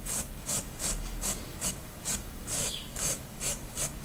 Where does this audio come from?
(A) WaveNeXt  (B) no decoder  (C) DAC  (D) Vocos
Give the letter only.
C